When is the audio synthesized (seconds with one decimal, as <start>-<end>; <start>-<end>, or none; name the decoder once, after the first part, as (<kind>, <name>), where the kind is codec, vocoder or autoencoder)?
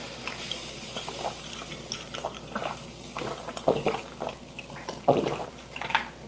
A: none